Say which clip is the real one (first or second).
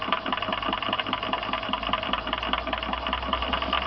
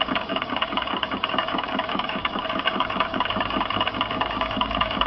first